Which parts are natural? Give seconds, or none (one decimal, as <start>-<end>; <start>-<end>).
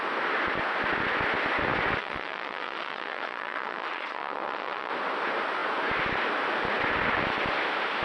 0.0-2.0; 4.9-8.0